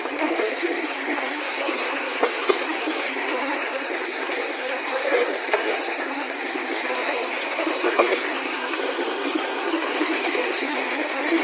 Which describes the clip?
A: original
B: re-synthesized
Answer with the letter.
B